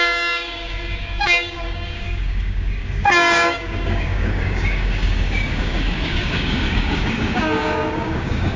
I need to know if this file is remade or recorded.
remade